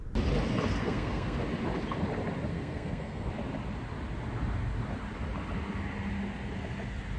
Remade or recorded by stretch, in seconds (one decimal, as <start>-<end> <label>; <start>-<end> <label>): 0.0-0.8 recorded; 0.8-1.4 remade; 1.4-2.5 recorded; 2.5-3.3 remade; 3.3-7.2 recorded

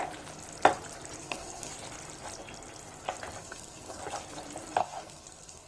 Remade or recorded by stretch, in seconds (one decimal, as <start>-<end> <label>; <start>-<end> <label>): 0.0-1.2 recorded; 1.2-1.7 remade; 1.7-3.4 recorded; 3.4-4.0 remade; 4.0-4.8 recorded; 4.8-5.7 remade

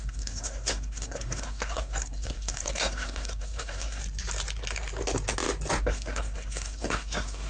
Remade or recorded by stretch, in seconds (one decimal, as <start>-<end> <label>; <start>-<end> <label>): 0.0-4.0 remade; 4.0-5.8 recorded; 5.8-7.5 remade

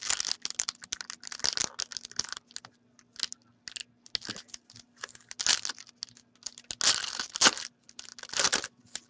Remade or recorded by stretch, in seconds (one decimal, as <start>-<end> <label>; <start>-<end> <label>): 0.0-9.1 recorded

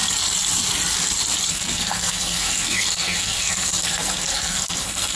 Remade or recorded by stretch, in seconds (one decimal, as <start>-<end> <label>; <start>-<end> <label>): 0.0-1.5 recorded; 1.5-5.2 remade

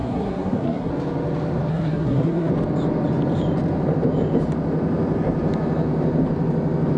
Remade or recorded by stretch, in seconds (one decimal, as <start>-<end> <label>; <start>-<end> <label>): 0.0-0.9 remade; 0.9-1.7 recorded; 1.7-2.5 remade; 2.5-7.0 recorded